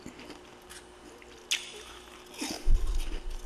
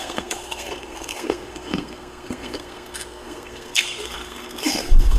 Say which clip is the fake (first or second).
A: second